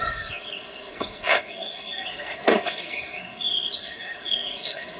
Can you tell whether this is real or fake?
fake